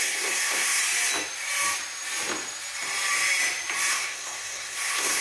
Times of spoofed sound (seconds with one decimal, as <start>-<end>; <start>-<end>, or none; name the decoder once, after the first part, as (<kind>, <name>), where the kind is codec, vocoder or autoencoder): 0.0-0.8 (codec, SNAC); 3.9-5.2